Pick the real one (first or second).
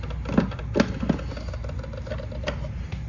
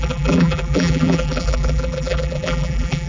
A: first